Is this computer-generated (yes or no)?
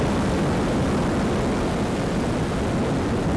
no